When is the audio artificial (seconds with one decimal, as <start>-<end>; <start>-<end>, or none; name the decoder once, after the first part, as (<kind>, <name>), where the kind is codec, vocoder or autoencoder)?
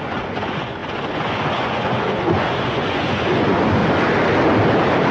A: 0.0-3.8 (vocoder, Vocos)